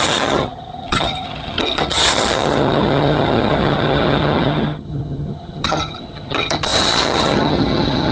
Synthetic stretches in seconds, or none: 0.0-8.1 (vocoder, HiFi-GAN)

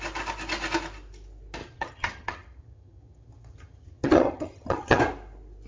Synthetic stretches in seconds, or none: 1.6-5.0 (vocoder, HiFi-GAN)